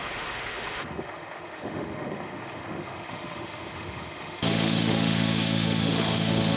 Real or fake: fake